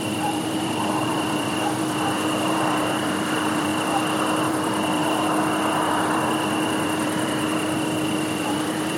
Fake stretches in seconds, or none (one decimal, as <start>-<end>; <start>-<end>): 0.0-3.7; 4.4-5.0; 5.9-9.0